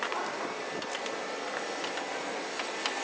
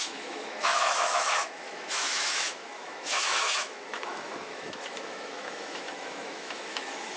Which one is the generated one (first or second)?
second